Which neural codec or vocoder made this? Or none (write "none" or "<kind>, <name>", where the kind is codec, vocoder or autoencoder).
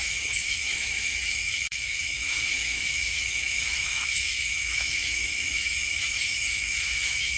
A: autoencoder, DAC-VAE